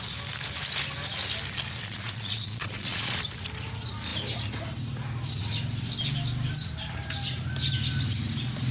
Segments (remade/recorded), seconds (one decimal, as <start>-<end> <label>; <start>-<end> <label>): 0.0-1.8 recorded; 1.8-3.2 remade; 3.2-8.7 recorded